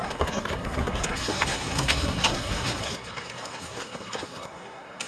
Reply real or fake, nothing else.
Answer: fake